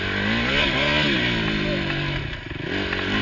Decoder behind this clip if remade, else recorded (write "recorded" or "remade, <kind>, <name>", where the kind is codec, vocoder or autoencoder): recorded